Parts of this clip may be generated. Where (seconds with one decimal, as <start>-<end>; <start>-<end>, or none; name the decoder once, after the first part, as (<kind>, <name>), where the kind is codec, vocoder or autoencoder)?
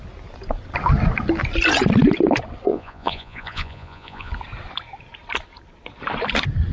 2.7-4.3 (vocoder, Vocos)